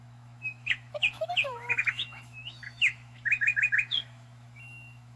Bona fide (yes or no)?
no